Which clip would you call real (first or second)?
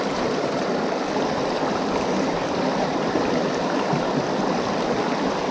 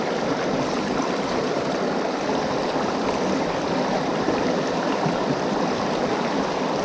first